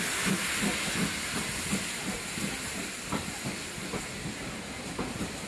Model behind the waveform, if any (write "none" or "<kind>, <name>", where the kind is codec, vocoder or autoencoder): none